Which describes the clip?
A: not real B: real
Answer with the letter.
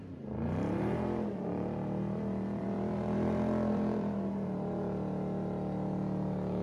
A